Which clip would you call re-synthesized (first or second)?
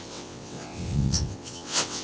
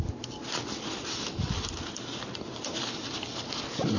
first